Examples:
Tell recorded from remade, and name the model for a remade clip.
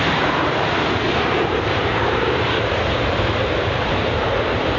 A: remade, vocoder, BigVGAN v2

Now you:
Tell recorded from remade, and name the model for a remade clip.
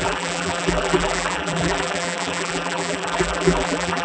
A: remade, vocoder, BigVGAN v2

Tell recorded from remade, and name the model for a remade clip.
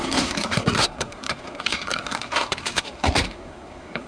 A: remade, codec, SNAC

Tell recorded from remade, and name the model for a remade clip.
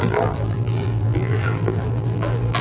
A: remade, vocoder, BigVGAN v2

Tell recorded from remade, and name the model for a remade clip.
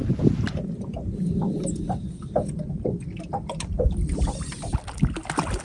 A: recorded